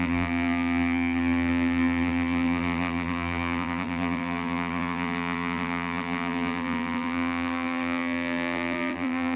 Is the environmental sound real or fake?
fake